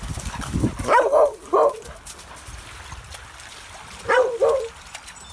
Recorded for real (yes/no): yes